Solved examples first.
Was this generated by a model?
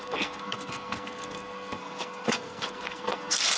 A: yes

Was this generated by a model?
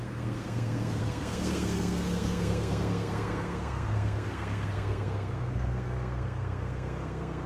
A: yes